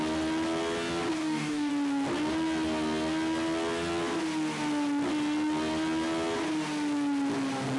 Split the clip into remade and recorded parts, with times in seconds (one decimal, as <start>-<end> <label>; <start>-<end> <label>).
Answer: 0.0-1.1 recorded; 1.1-1.7 remade; 1.7-7.8 recorded